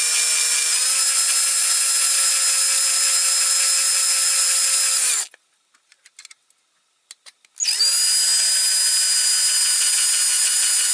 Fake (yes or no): no